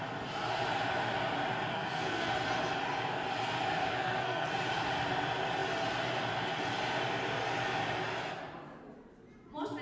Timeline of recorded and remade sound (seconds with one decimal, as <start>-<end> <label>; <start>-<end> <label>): 0.0-1.7 recorded; 1.7-2.3 remade; 2.3-3.9 recorded; 3.9-4.5 remade; 4.5-9.8 recorded